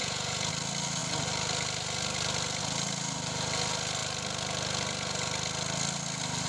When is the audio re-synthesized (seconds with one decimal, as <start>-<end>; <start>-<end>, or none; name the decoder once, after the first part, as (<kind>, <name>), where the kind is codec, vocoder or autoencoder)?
0.0-0.5 (vocoder, Vocos)

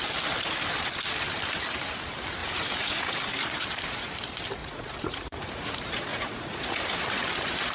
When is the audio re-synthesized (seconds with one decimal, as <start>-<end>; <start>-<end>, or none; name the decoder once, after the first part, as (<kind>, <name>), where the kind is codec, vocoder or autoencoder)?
2.4-3.2 (vocoder, Vocos); 4.6-5.5; 6.1-6.8

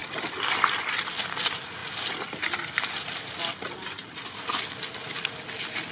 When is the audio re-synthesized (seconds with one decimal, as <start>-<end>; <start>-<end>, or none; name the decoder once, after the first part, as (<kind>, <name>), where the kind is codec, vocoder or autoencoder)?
none

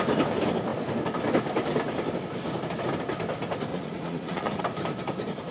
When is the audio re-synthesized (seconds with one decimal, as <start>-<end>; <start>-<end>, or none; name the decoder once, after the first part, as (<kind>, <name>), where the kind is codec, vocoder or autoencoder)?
3.7-4.6 (vocoder, Vocos)

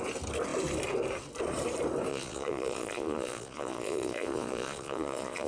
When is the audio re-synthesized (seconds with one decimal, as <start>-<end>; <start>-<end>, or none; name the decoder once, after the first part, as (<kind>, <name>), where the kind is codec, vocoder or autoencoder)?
2.1-5.5 (vocoder, Vocos)

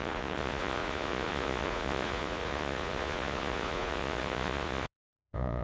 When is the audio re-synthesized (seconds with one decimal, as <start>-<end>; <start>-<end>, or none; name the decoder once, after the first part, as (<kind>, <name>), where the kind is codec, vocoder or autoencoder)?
0.0-5.6 (vocoder, Vocos)

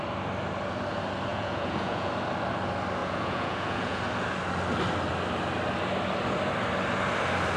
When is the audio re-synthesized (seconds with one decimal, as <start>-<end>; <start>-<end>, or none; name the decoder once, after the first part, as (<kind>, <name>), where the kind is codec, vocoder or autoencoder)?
1.3-2.1 (vocoder, Vocos); 3.0-4.0